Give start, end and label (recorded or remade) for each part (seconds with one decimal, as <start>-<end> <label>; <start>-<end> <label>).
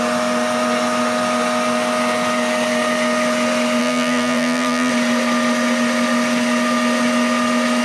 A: 0.0-3.8 recorded; 3.8-4.9 remade; 4.9-7.8 recorded